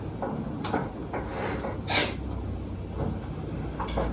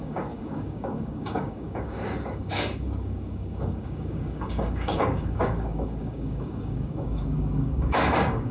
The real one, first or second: first